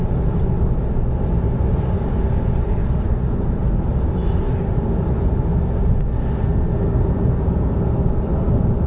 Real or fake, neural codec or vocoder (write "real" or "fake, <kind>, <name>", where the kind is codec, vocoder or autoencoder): real